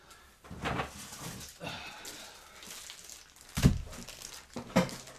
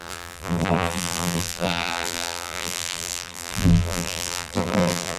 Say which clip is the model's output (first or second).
second